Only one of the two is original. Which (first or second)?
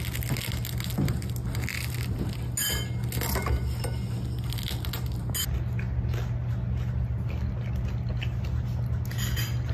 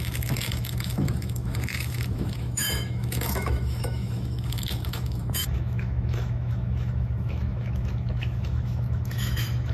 first